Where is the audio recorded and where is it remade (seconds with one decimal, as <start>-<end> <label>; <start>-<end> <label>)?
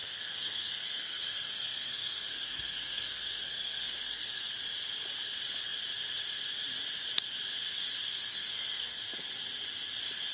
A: 0.0-4.5 remade; 4.5-8.0 recorded; 8.0-9.0 remade; 9.0-10.3 recorded